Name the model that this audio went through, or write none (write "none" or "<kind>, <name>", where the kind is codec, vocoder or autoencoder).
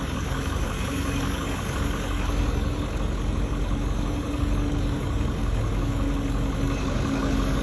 codec, DAC